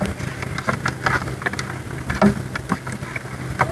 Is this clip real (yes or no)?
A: yes